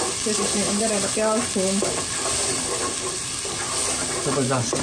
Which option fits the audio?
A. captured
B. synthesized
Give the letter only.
A